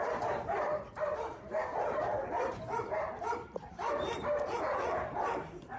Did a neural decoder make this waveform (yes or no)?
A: yes